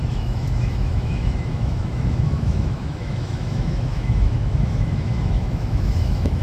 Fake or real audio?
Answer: fake